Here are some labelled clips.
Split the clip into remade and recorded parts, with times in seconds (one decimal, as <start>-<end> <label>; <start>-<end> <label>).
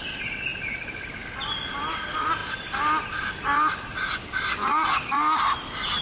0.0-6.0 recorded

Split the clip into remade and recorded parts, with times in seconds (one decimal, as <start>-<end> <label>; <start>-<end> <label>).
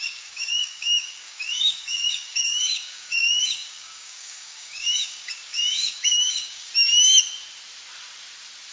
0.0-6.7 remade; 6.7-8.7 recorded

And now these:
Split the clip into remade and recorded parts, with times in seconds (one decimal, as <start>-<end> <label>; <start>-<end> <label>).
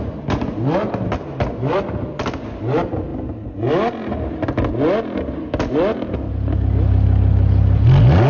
0.0-8.3 recorded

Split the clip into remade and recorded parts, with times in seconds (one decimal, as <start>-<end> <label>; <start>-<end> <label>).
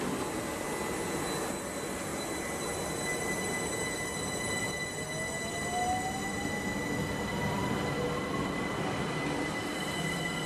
0.0-2.1 recorded; 2.1-2.6 remade; 2.6-7.6 recorded; 7.6-10.5 remade